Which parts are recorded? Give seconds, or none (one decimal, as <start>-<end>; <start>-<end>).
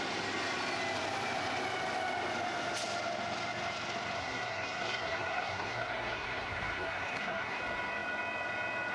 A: 0.0-4.2; 7.6-8.9